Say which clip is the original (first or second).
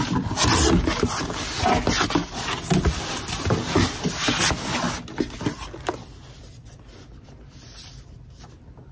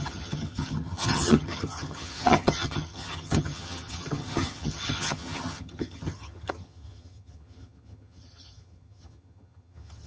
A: first